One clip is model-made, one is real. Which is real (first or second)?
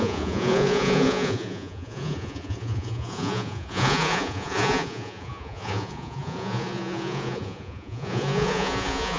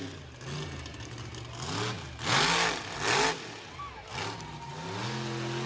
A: second